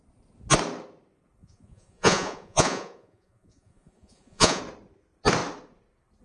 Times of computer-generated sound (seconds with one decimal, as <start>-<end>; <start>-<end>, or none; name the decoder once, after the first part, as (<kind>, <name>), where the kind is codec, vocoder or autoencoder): 1.4-4.6 (vocoder, Vocos)